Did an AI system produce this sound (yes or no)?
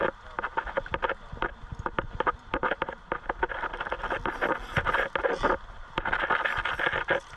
no